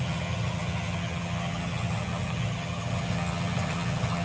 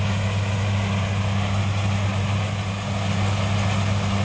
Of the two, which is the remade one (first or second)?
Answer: first